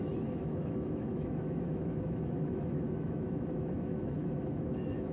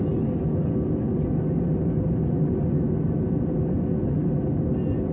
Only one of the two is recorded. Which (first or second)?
second